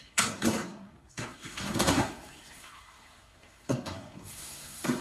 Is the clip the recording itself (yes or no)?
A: no